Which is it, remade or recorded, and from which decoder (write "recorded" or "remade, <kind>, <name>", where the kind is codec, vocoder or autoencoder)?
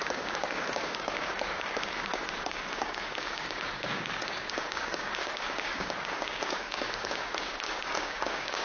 remade, codec, DAC